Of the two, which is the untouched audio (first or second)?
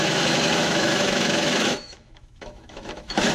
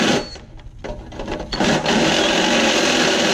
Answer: second